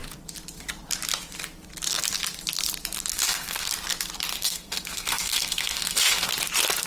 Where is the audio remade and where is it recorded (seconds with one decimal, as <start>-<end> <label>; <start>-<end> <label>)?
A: 0.0-3.1 recorded; 3.1-3.7 remade; 3.7-4.3 recorded; 4.3-6.3 remade; 6.3-6.9 recorded